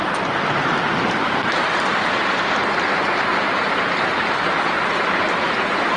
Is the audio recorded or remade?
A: recorded